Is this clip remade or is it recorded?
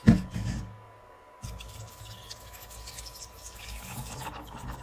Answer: remade